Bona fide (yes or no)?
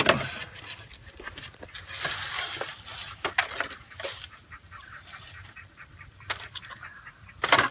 yes